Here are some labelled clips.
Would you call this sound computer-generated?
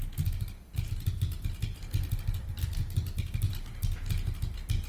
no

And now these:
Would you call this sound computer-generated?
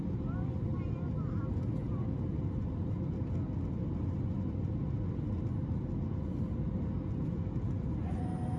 no